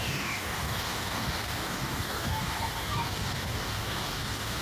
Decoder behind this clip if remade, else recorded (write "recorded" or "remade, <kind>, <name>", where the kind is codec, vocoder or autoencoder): remade, codec, DAC